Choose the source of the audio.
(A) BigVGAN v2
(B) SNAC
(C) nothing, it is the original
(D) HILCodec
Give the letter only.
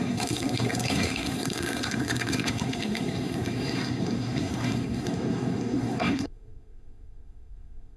B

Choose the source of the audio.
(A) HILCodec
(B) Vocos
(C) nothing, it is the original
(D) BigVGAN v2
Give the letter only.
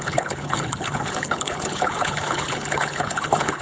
A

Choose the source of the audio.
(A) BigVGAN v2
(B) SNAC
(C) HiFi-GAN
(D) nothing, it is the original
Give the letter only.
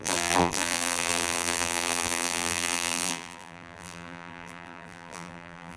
A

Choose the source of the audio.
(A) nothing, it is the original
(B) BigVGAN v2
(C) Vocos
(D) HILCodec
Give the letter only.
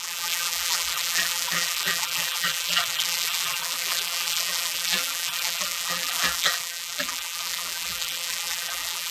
B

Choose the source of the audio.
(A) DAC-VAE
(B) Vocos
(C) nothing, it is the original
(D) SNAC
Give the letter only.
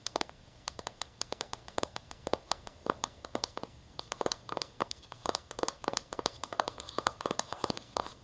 D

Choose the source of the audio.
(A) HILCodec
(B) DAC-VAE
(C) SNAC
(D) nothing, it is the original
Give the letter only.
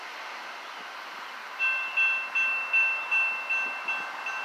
D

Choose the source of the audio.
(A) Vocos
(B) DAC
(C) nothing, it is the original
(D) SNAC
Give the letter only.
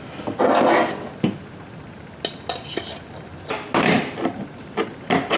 C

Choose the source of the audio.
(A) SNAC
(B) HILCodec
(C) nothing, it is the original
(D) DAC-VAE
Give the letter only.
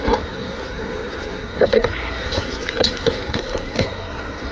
A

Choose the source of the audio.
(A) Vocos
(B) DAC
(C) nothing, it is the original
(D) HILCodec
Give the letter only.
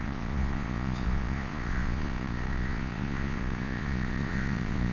A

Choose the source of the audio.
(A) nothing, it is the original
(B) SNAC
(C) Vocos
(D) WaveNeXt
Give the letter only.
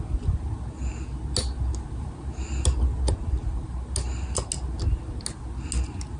A